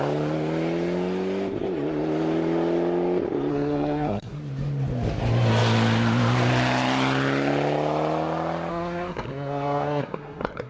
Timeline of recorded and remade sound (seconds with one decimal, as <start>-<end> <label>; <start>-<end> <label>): 0.0-3.5 recorded; 3.5-4.4 remade; 4.4-8.7 recorded; 8.7-10.7 remade